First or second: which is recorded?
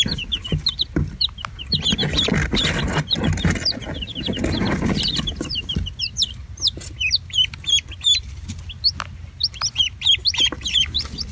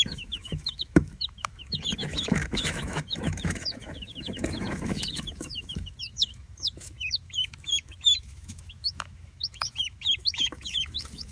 first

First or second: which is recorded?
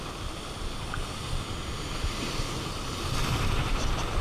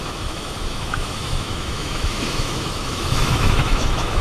first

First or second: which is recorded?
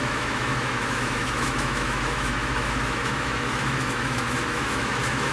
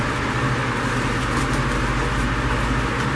second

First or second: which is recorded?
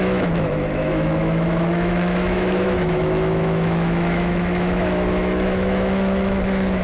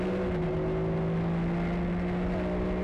second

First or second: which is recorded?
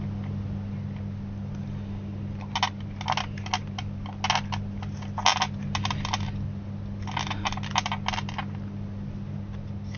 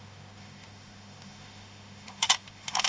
first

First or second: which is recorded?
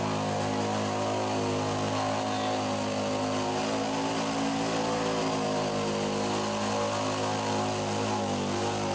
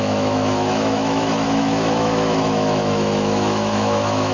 first